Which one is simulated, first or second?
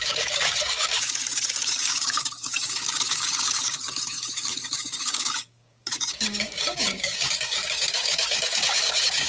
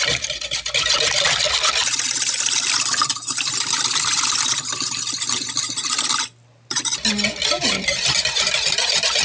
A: first